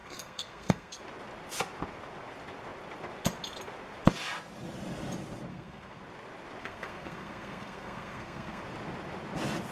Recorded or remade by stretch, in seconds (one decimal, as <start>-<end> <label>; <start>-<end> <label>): 0.0-1.0 remade; 1.0-5.5 recorded; 5.5-6.0 remade; 6.0-6.6 recorded; 6.6-8.6 remade; 8.6-9.7 recorded